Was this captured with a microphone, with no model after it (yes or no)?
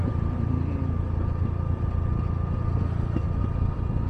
yes